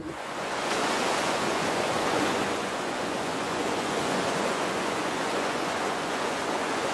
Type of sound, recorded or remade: remade